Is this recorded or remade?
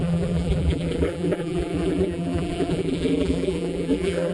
remade